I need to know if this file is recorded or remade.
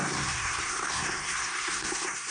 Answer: remade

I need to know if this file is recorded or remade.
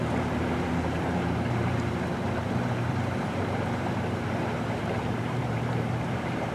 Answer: remade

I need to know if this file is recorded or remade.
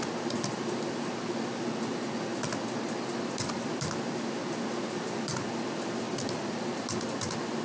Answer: recorded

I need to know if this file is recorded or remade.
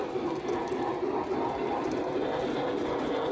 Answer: recorded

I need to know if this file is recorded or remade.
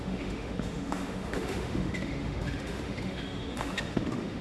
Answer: remade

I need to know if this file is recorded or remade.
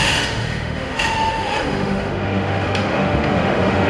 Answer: remade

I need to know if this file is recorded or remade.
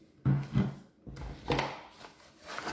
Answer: recorded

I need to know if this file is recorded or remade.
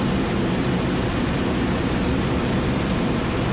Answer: recorded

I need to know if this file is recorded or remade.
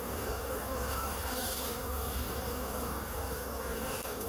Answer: remade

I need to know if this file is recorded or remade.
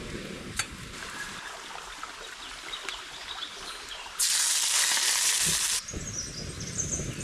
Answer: recorded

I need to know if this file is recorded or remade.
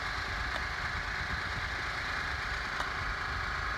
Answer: recorded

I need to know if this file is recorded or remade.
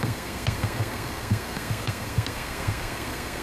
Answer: remade